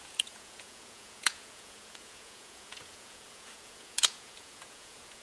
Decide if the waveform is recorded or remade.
remade